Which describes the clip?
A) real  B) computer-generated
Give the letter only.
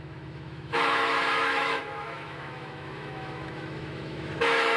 B